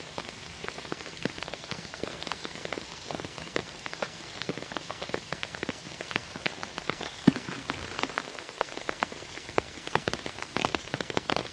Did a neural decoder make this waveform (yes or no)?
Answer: yes